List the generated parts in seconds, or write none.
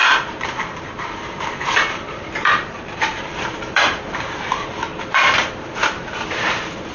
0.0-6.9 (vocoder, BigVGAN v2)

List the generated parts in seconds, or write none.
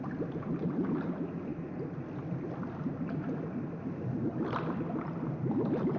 none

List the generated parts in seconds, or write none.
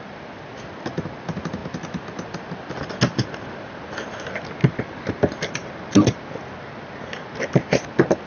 none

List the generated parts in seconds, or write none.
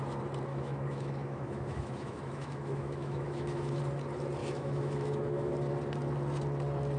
0.5-3.8 (autoencoder, DAC-VAE); 4.4-5.5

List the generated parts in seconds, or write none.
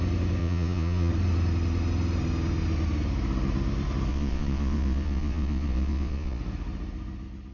0.4-1.1 (vocoder, Vocos); 4.1-6.4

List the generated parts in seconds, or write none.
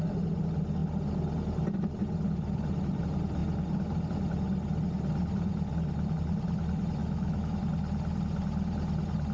7.0-7.6 (autoencoder, DAC-VAE)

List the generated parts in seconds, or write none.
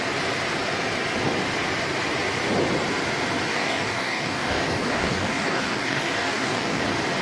3.5-6.8 (codec, DAC)